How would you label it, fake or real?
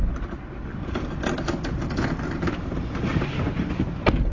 real